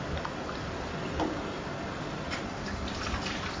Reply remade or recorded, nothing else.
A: recorded